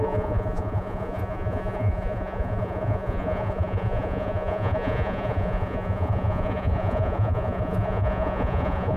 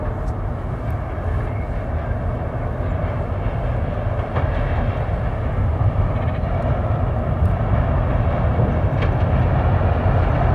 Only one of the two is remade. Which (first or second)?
first